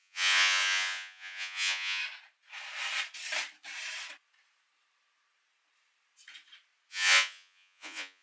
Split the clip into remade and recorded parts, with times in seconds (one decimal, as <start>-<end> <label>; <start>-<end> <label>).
0.0-2.0 remade; 2.0-6.9 recorded; 6.9-8.2 remade